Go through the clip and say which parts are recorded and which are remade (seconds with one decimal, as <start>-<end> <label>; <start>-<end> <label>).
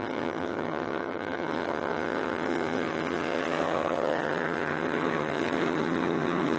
0.0-6.6 remade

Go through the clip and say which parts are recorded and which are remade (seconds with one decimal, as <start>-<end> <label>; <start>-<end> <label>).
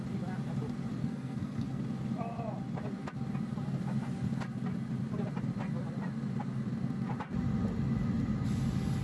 0.0-1.0 recorded; 1.0-1.8 remade; 1.8-9.0 recorded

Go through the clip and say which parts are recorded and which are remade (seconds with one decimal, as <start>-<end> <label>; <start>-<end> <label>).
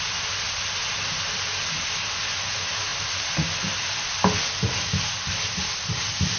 0.0-6.4 recorded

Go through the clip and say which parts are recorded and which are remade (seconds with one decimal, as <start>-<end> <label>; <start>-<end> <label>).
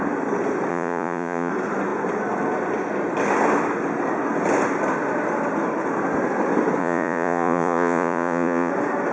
0.0-0.7 recorded; 0.7-1.5 remade; 1.5-6.8 recorded; 6.8-8.7 remade; 8.7-9.1 recorded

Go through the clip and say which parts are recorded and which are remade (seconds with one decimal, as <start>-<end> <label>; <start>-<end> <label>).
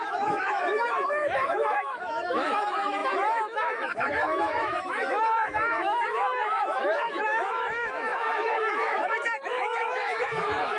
0.0-10.8 remade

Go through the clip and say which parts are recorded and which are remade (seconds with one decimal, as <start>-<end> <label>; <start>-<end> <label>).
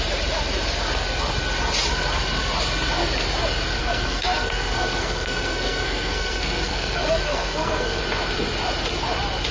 0.0-3.8 recorded; 3.8-8.0 remade; 8.0-9.5 recorded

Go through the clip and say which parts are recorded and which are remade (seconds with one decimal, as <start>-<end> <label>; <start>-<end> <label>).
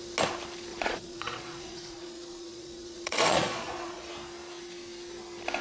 0.0-0.7 recorded; 0.7-4.1 remade; 4.1-5.6 recorded